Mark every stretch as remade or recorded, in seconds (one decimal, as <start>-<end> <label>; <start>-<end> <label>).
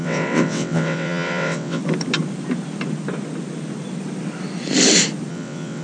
0.0-1.8 remade; 1.8-5.3 recorded; 5.3-5.8 remade